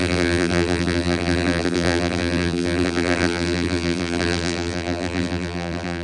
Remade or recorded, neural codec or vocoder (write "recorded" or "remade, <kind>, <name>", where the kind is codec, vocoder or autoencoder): remade, vocoder, BigVGAN v2